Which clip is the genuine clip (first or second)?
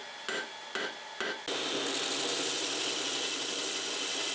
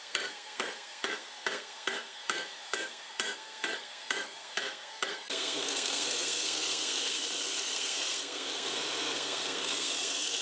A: first